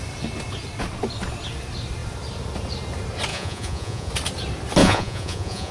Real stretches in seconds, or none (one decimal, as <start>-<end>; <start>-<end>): 0.0-3.3; 4.1-4.8